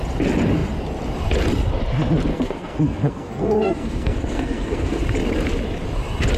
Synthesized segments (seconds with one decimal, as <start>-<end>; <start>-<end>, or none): 2.3-5.0